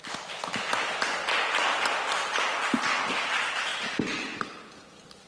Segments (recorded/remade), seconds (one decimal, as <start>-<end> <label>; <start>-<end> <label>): 0.0-5.3 recorded